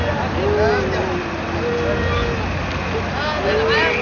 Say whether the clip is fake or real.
real